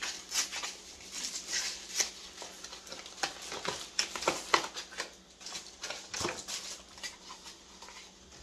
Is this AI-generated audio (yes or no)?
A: no